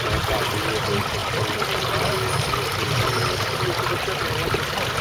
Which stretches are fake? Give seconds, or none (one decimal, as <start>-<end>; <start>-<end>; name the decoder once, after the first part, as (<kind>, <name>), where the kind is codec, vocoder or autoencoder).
none